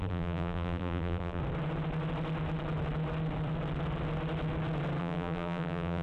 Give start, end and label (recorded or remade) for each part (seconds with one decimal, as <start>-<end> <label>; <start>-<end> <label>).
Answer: 0.0-1.4 remade; 1.4-5.0 recorded; 5.0-6.0 remade